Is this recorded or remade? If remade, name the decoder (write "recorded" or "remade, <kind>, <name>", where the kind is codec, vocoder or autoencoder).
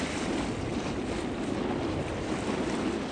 recorded